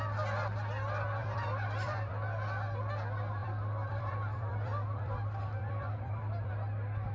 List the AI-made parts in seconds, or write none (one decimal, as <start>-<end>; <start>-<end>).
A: 1.2-2.1; 3.4-6.5